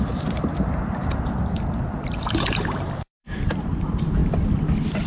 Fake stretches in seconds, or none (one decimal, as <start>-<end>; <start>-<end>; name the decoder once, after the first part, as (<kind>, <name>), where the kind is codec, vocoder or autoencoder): 0.0-4.2 (vocoder, BigVGAN v2)